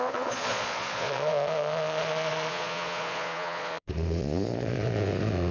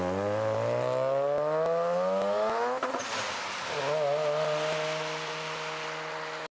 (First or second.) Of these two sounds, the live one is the second